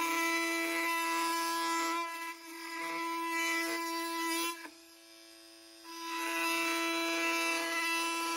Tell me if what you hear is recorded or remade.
recorded